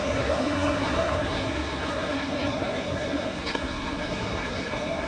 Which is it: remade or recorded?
remade